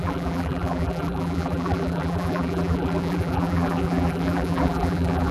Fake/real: fake